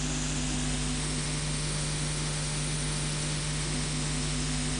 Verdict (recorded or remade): remade